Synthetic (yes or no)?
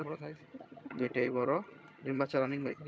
yes